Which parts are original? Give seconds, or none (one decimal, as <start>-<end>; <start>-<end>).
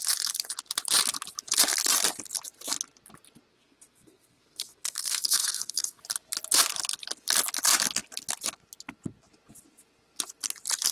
0.0-3.5; 6.0-10.9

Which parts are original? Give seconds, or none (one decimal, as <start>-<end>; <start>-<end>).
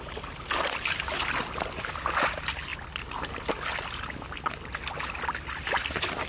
0.0-2.7; 3.5-6.3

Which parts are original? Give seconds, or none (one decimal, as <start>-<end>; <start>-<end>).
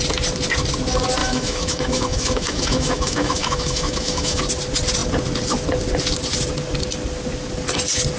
0.0-1.2; 4.4-8.2